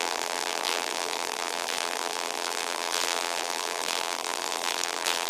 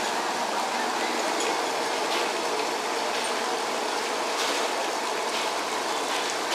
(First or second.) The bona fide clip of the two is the second